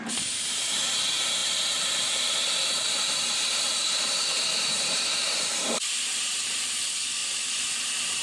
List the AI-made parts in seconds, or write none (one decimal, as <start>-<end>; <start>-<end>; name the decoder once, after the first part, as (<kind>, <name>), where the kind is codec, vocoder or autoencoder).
0.0-8.2 (vocoder, BigVGAN v2)